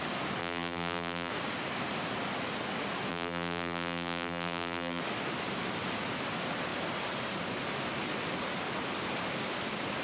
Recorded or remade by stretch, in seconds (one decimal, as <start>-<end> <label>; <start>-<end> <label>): 0.0-0.4 recorded; 0.4-1.3 remade; 1.3-3.1 recorded; 3.1-5.0 remade; 5.0-10.0 recorded

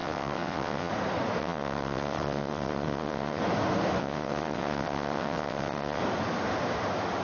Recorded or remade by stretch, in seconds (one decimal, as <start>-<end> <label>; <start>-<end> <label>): 0.0-0.9 remade; 0.9-1.4 recorded; 1.4-3.4 remade; 3.4-4.0 recorded; 4.0-6.0 remade; 6.0-7.2 recorded

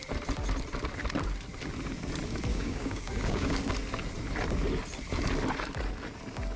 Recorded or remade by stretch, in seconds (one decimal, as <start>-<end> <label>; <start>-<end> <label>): 0.0-2.5 recorded; 2.5-3.6 remade; 3.6-6.6 recorded

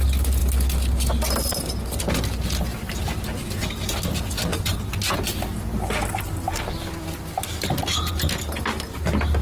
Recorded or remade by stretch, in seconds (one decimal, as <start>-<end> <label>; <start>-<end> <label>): 0.0-9.4 recorded

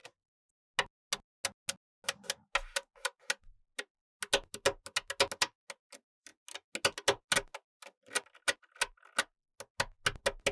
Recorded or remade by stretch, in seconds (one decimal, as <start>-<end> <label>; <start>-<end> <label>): 0.0-10.5 recorded

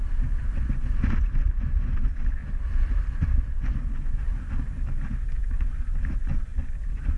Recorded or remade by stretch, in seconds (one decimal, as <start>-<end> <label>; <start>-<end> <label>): 0.0-2.4 recorded; 2.4-4.6 remade; 4.6-6.5 recorded; 6.5-7.2 remade

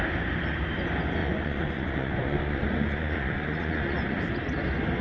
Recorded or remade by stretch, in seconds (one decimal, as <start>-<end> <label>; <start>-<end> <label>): 0.0-1.2 recorded; 1.2-4.2 remade; 4.2-5.0 recorded